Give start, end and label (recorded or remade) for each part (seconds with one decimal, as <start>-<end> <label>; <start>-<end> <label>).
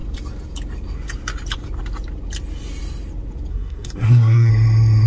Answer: 0.0-3.5 recorded; 3.5-4.5 remade; 4.5-5.1 recorded